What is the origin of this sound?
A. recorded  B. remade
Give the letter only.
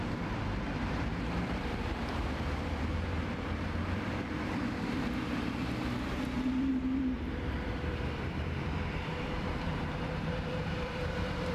B